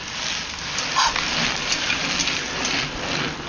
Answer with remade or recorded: recorded